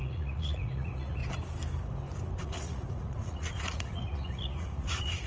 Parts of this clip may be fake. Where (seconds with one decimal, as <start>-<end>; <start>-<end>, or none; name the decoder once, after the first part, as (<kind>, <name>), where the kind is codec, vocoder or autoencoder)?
0.0-1.2 (vocoder, Vocos); 2.4-5.3